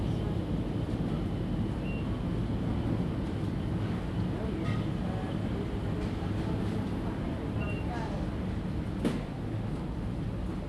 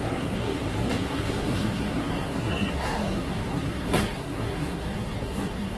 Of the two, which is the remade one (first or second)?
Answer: second